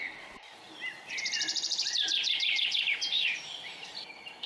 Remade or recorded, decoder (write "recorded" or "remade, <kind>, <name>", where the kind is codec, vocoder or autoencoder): remade, vocoder, BigVGAN v2